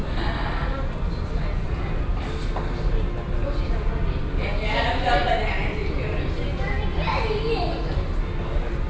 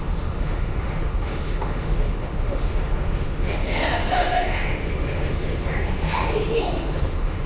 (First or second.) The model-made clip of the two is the second